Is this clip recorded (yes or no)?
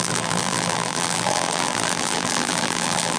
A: no